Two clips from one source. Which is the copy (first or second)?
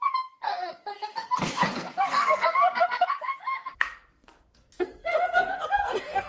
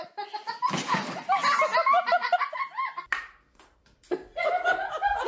first